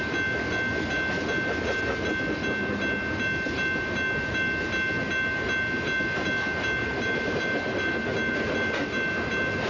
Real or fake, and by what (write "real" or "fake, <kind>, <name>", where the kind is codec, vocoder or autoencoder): real